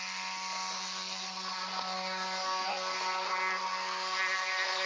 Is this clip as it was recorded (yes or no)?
yes